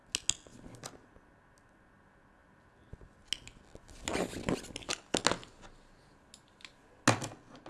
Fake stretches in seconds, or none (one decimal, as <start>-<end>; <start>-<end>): none